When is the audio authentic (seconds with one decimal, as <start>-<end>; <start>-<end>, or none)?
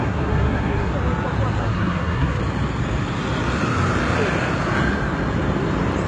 0.9-1.6; 2.4-6.1